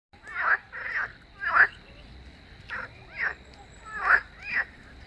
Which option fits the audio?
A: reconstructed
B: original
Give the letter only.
B